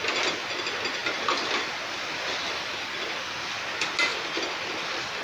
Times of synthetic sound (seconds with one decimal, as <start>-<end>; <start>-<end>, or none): 1.0-3.1; 4.1-5.2